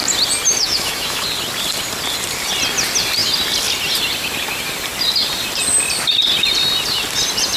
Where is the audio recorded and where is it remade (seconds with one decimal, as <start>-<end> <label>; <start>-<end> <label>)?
0.0-0.6 recorded; 0.6-1.2 remade; 1.2-7.6 recorded

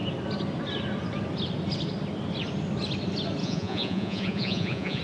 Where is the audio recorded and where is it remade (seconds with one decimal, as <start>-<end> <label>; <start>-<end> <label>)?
0.0-3.4 recorded; 3.4-5.0 remade

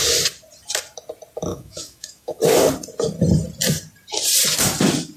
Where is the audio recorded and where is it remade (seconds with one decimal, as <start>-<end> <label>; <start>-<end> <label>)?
0.0-1.5 recorded; 1.5-2.4 remade; 2.4-5.2 recorded

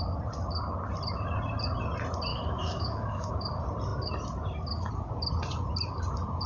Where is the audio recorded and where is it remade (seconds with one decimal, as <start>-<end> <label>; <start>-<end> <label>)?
0.0-2.3 recorded; 2.3-3.3 remade; 3.3-6.5 recorded

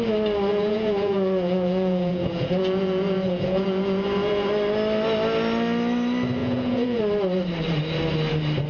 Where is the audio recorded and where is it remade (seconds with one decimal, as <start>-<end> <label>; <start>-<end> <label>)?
0.0-0.5 recorded; 0.5-4.5 remade; 4.5-6.4 recorded; 6.4-7.0 remade; 7.0-8.7 recorded

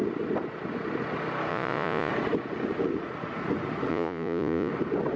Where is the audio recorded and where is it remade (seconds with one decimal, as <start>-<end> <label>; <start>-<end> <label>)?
0.0-1.5 recorded; 1.5-2.1 remade; 2.1-3.9 recorded; 3.9-4.7 remade; 4.7-5.2 recorded